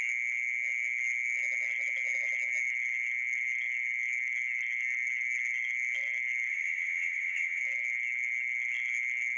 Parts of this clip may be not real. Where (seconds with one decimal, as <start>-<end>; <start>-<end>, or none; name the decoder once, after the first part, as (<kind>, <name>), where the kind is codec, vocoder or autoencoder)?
6.5-7.6 (vocoder, HiFi-GAN)